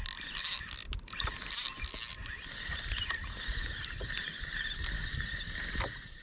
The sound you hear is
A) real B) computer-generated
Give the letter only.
A